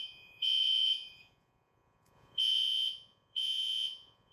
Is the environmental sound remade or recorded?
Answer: remade